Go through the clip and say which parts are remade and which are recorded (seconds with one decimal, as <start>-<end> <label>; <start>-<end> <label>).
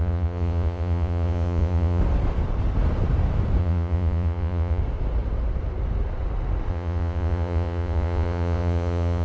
0.0-2.0 remade; 2.0-3.6 recorded; 3.6-4.8 remade; 4.8-6.7 recorded; 6.7-9.2 remade